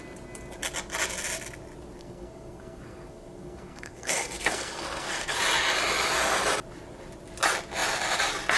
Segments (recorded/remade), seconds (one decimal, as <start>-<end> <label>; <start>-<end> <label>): 0.0-2.0 recorded; 2.0-5.4 remade; 5.4-8.6 recorded